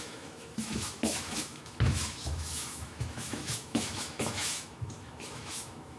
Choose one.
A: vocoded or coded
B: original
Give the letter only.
A